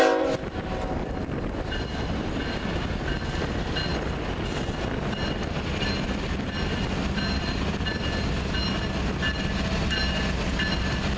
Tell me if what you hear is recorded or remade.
recorded